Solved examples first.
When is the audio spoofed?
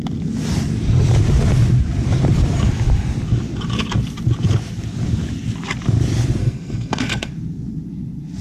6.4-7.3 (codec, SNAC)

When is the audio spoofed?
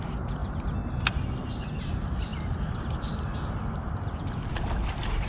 none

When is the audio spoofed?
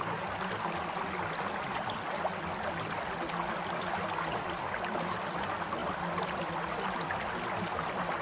none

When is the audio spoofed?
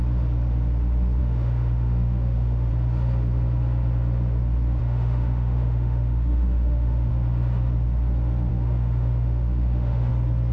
1.2-2.7 (autoencoder, DAC-VAE); 4.8-7.1; 8.5-10.1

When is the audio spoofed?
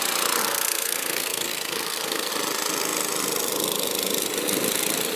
0.4-2.3 (codec, SNAC)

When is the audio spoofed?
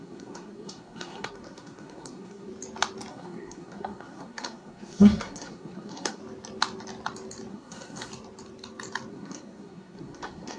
0.0-2.5 (codec, SNAC); 3.1-6.2; 7.5-8.1; 9.1-10.6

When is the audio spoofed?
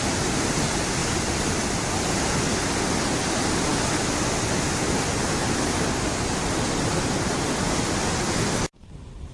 none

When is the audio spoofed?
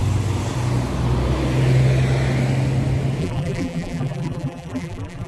3.2-5.3 (vocoder, BigVGAN v2)